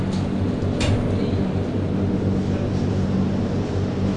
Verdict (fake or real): real